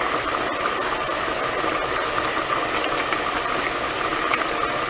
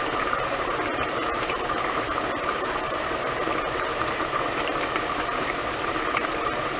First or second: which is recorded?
first